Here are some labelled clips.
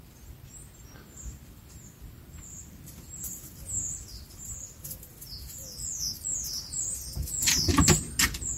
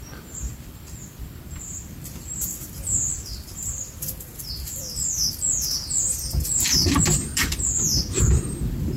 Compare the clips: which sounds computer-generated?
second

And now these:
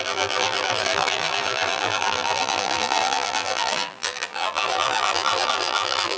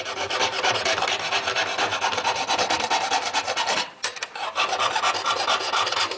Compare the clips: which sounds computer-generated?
first